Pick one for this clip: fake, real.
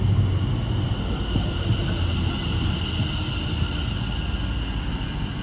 real